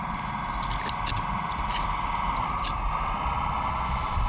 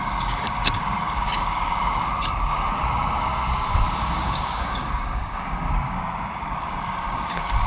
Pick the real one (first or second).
first